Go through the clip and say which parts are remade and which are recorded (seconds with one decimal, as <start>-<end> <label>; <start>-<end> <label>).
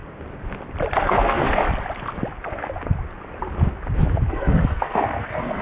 0.0-1.0 recorded; 1.0-1.6 remade; 1.6-4.3 recorded; 4.3-5.6 remade